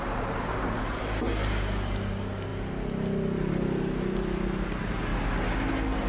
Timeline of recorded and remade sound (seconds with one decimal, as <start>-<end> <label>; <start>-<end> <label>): 0.0-6.1 recorded